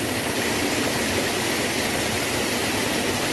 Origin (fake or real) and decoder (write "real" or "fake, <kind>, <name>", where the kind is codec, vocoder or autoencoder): real